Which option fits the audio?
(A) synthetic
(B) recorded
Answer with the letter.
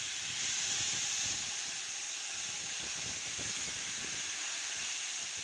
A